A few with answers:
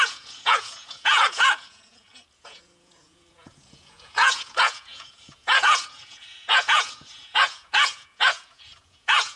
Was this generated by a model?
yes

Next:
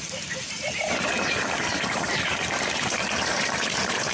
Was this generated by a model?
yes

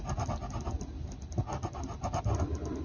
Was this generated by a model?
no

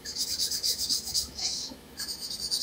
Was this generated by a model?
yes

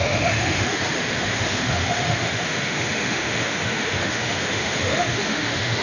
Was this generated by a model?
yes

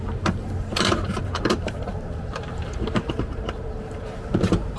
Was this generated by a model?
yes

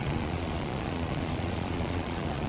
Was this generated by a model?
yes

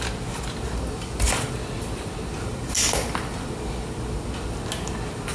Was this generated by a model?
no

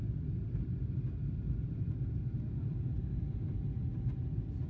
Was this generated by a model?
no